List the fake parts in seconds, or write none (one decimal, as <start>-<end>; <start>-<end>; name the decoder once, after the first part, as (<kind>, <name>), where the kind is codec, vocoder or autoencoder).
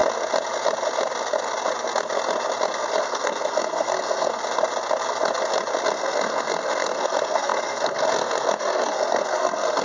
3.0-4.4 (codec, SNAC); 5.9-9.8